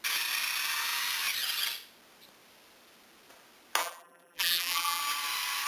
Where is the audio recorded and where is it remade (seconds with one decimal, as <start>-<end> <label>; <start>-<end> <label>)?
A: 0.0-3.8 recorded; 3.8-5.0 remade; 5.0-5.7 recorded